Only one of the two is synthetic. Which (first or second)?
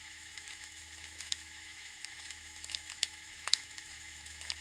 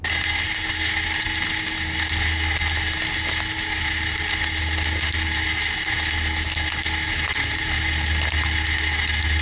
first